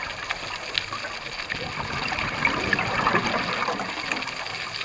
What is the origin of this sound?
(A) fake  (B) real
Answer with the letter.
B